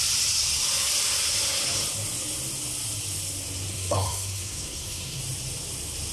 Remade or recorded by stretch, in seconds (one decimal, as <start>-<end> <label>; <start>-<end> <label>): 0.0-3.7 recorded; 3.7-5.2 remade; 5.2-6.1 recorded

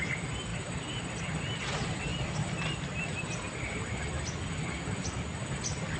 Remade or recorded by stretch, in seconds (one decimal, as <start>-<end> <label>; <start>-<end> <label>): 0.0-6.0 recorded

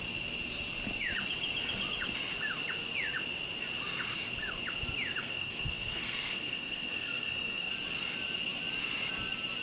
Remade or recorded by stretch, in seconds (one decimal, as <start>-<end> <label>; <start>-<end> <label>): 0.0-5.2 recorded; 5.2-7.7 remade; 7.7-9.6 recorded

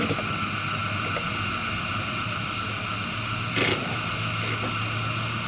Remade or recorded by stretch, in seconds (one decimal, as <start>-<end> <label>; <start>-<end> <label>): 0.0-5.5 recorded

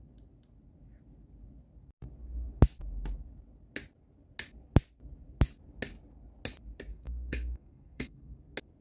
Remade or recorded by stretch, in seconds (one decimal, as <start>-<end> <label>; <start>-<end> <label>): 0.0-6.9 recorded; 6.9-8.4 remade; 8.4-8.8 recorded

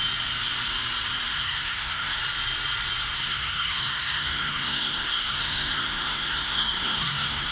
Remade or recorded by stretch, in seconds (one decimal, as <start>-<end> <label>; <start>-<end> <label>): 0.0-1.3 recorded; 1.3-2.2 remade; 2.2-3.1 recorded; 3.1-7.5 remade

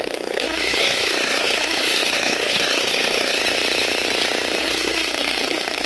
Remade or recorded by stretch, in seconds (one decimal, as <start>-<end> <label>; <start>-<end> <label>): 0.0-3.4 remade; 3.4-4.6 recorded; 4.6-5.9 remade

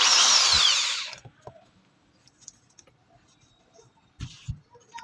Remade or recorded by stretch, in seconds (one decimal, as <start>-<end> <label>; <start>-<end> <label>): 0.0-5.0 recorded